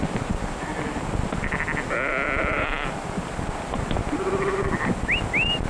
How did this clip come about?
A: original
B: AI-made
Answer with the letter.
A